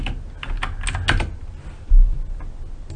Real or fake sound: real